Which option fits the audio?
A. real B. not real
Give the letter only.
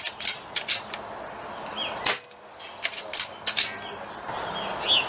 A